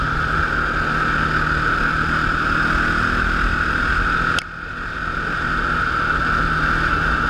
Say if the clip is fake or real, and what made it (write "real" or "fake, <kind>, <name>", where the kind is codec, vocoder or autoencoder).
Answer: real